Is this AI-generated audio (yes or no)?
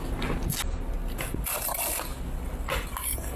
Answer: no